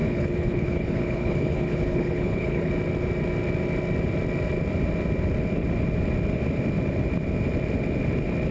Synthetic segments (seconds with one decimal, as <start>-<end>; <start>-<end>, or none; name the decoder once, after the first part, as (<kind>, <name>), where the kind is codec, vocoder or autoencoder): 0.0-2.7 (codec, HILCodec)